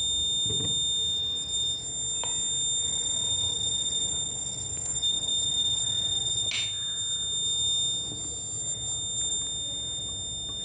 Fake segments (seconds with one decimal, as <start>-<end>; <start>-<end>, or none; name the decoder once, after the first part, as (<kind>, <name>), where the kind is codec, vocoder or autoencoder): 2.8-6.5 (vocoder, Vocos)